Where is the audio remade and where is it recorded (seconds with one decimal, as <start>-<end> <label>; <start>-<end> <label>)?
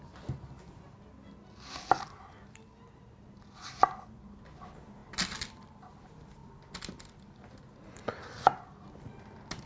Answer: 0.0-9.7 recorded